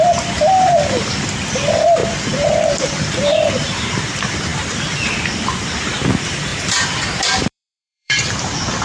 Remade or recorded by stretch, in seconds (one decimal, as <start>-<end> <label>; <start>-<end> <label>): 0.0-4.5 remade; 4.5-5.8 recorded; 5.8-8.8 remade